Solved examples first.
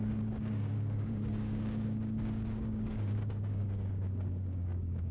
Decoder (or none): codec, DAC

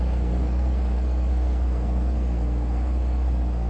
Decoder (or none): codec, SNAC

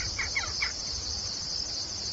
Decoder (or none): none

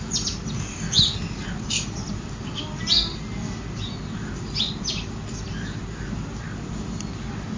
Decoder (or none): none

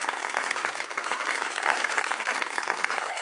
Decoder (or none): codec, SNAC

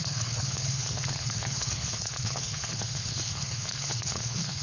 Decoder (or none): codec, HILCodec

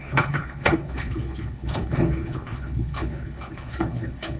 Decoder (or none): codec, HILCodec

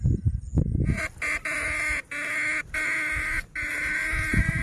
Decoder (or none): none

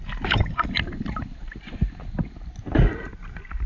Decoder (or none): none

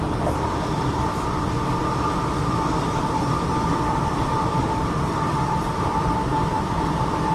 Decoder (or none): vocoder, BigVGAN v2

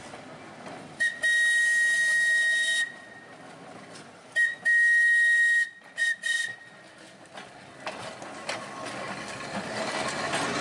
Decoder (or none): none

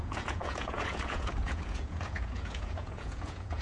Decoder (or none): vocoder, Vocos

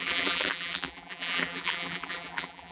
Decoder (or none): vocoder, BigVGAN v2